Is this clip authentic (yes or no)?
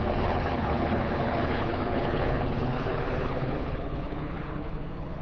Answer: no